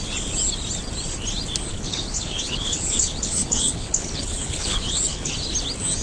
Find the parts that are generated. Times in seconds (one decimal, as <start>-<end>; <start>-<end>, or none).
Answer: 1.7-5.3